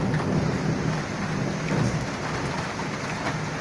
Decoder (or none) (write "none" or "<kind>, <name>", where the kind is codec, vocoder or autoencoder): none